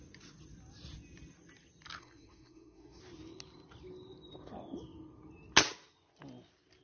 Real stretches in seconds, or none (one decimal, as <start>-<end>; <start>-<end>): 0.0-2.0; 3.0-6.8